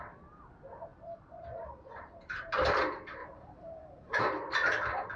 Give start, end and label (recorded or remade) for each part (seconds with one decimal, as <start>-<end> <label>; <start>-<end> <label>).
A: 0.0-0.9 recorded; 0.9-2.5 remade; 2.5-3.2 recorded; 3.2-4.2 remade; 4.2-5.2 recorded